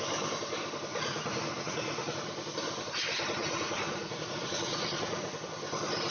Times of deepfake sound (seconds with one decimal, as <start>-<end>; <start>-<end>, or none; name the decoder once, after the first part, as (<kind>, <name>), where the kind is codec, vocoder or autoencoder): 0.9-2.3 (vocoder, Vocos); 3.4-5.5